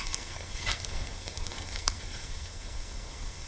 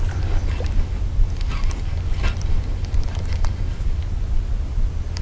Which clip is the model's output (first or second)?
first